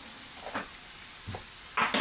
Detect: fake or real real